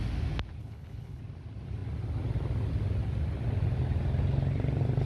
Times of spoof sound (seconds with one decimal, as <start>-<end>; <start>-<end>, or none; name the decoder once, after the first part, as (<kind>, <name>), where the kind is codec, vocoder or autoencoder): 0.6-1.2 (codec, HILCodec)